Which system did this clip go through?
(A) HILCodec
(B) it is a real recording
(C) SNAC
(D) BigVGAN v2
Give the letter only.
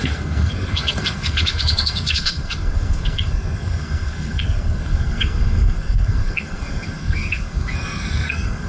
C